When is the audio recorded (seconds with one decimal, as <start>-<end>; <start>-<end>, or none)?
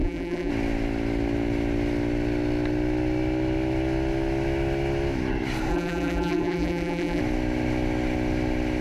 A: 0.5-5.7; 7.2-8.8